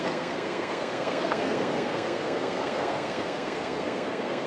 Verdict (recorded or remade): remade